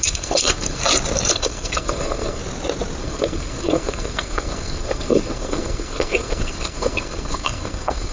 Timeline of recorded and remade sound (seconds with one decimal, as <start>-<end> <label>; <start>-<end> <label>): 0.0-0.8 remade; 0.8-1.3 recorded; 1.3-2.4 remade; 2.4-3.0 recorded; 3.0-8.1 remade